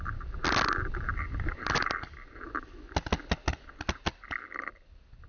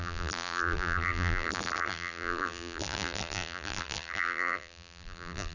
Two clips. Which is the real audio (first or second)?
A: first